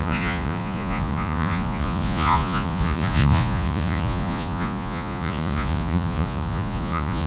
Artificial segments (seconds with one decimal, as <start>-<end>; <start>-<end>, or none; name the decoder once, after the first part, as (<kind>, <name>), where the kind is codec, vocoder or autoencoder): 0.0-7.3 (vocoder, Vocos)